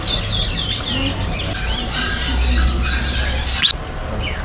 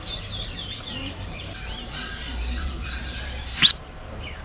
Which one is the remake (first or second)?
second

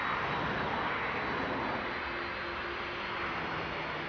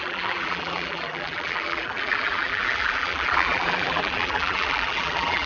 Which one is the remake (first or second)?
second